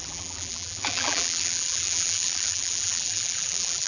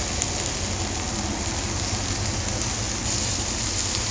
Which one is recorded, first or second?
second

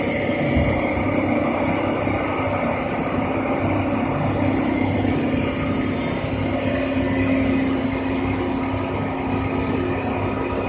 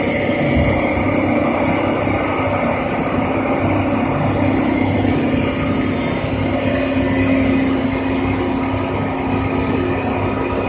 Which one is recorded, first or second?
second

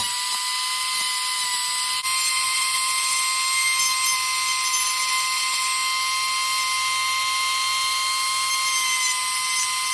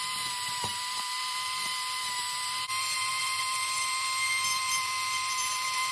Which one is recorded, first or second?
first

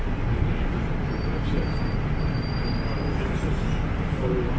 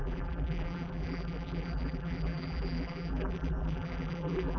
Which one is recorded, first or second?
first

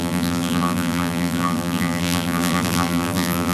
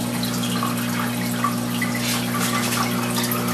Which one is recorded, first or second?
second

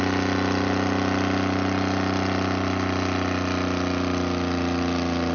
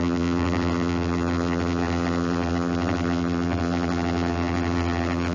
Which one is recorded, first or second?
first